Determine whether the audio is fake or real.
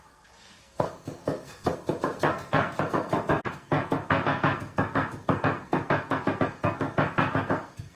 fake